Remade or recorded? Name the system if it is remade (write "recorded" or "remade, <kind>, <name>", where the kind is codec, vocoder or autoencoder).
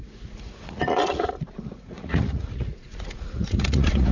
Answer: remade, vocoder, Vocos